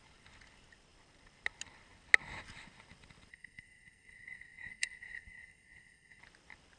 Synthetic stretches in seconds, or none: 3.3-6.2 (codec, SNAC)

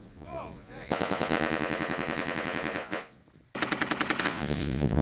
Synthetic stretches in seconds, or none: 0.0-3.2 (vocoder, Vocos); 4.2-5.0

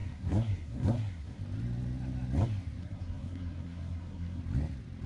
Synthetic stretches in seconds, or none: 0.0-1.4 (codec, SNAC); 2.8-4.4